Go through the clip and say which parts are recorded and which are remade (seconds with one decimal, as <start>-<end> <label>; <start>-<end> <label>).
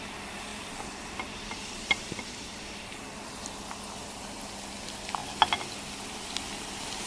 0.0-0.5 recorded; 0.5-3.5 remade; 3.5-7.1 recorded